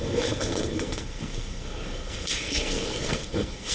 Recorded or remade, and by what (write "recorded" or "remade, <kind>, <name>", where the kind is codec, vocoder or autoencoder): remade, codec, SNAC